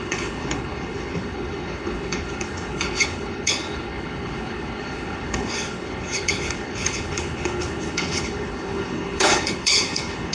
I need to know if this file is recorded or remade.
remade